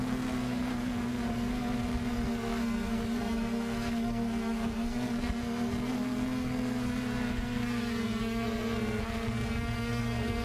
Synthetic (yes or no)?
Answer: yes